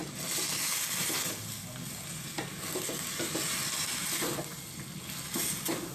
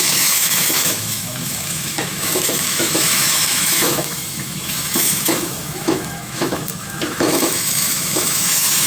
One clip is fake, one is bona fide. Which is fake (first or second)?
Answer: second